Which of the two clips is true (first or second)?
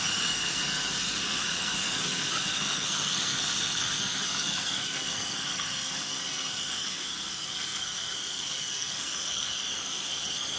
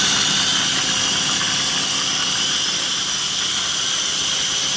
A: second